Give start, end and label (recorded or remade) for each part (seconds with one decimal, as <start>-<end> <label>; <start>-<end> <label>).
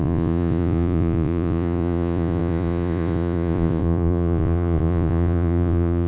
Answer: 0.0-6.1 remade